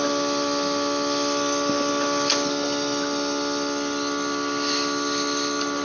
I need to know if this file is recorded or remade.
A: recorded